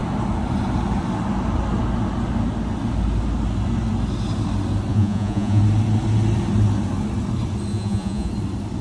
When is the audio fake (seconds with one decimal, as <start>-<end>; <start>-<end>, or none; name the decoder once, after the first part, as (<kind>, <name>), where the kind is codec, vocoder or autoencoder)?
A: 4.9-5.6 (vocoder, Vocos); 7.7-8.3